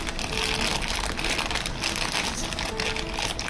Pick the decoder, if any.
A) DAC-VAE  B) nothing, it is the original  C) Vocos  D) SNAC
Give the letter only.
B